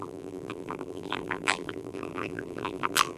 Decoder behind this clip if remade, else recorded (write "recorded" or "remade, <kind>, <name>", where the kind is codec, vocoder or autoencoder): remade, vocoder, BigVGAN v2